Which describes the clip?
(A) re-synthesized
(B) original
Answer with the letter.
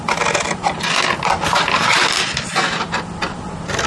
B